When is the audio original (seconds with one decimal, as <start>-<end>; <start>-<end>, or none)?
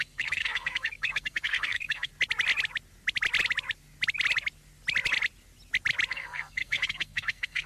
2.1-6.1